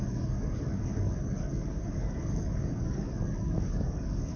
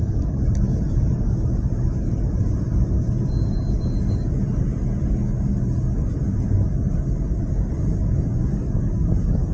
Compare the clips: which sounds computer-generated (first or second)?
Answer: first